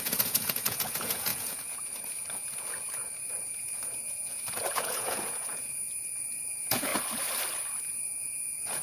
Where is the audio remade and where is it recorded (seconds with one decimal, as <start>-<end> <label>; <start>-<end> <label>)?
0.0-6.9 remade; 6.9-7.8 recorded; 7.8-8.8 remade